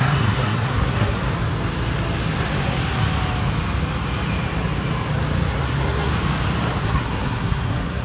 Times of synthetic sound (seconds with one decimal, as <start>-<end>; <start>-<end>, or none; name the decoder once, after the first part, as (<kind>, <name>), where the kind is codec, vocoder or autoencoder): 0.0-1.2 (codec, SNAC); 5.6-6.1; 6.8-8.0